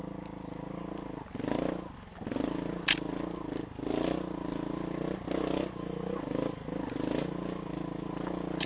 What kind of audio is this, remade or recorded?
recorded